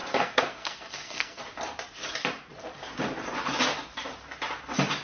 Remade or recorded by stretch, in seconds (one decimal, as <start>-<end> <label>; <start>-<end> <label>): 0.0-1.4 remade; 1.4-5.0 recorded

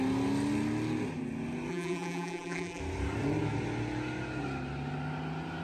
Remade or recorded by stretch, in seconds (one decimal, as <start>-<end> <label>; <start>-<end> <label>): 0.0-1.7 recorded; 1.7-2.8 remade; 2.8-5.6 recorded

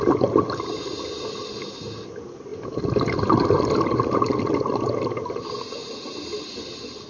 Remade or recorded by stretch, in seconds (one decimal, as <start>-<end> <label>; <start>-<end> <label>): 0.0-7.1 recorded

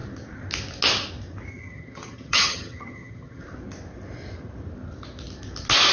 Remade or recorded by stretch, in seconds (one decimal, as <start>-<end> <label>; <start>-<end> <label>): 0.0-1.5 recorded; 1.5-3.4 remade; 3.4-5.9 recorded